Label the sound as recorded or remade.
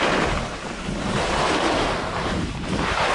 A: recorded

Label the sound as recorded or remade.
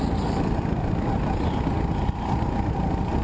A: recorded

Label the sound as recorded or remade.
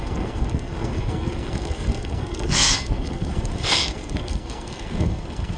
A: remade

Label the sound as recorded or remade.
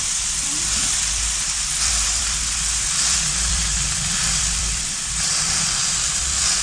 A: remade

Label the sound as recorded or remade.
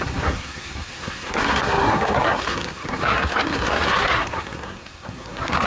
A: remade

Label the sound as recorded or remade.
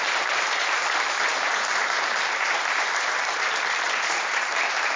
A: remade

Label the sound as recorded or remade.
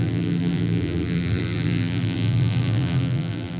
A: remade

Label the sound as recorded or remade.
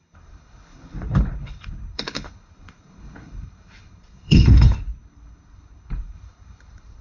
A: remade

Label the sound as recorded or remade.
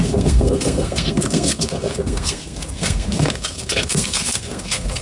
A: remade